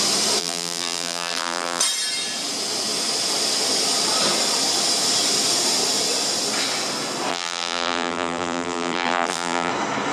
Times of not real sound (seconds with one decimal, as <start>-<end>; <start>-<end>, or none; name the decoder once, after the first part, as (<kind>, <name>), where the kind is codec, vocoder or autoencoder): 0.4-1.8 (vocoder, BigVGAN v2); 7.3-9.7